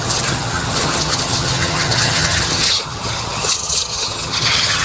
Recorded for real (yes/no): no